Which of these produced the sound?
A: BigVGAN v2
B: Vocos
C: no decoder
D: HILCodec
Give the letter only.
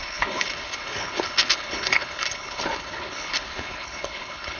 D